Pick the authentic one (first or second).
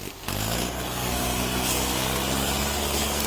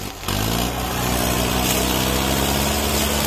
second